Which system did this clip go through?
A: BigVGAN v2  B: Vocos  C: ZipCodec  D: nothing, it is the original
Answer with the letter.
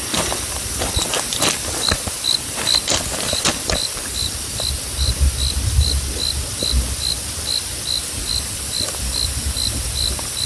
D